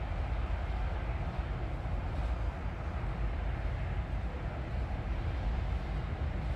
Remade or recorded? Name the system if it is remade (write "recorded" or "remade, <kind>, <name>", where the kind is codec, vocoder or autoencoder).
recorded